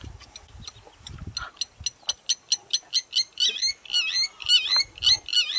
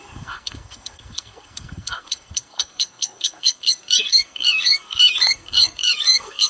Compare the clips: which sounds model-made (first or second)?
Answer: second